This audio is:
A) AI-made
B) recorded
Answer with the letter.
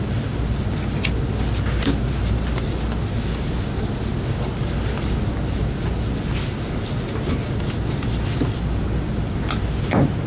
B